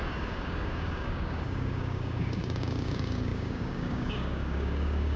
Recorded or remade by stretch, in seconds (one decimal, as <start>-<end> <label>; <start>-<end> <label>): 0.0-5.2 remade